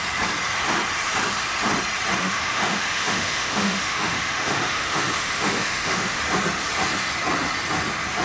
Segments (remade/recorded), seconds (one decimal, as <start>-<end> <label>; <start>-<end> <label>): 0.0-2.2 recorded; 2.2-6.2 remade; 6.2-8.2 recorded